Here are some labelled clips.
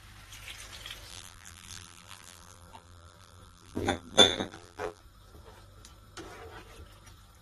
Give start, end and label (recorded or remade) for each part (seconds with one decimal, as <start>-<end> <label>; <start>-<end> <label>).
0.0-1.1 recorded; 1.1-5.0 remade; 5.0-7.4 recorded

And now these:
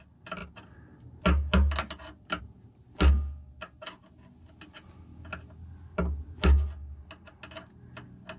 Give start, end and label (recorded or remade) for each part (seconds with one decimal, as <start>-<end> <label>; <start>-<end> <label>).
0.0-8.4 recorded

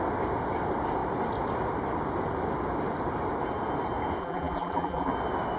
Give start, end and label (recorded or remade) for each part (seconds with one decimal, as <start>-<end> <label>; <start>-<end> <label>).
0.0-4.2 recorded; 4.2-5.1 remade; 5.1-5.6 recorded